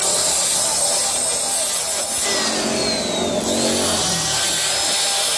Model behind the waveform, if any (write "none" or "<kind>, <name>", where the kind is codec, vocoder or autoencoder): none